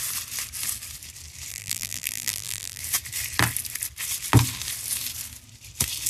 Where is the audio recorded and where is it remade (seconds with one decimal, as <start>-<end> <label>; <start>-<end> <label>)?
0.0-1.5 recorded; 1.5-2.8 remade; 2.8-6.1 recorded